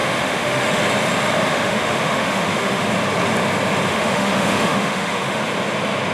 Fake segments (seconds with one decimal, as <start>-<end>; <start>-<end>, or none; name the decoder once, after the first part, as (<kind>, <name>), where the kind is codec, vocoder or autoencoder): 0.0-0.8 (autoencoder, DAC-VAE); 1.5-2.9; 3.9-5.4